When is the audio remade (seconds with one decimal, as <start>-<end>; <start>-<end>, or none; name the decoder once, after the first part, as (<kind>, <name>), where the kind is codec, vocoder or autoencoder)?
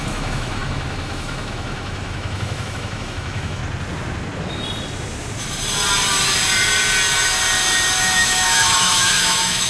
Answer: 0.0-3.6 (autoencoder, DAC-VAE); 8.0-9.7